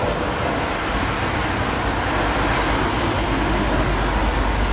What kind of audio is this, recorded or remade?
recorded